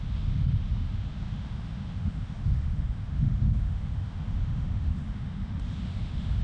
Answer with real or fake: fake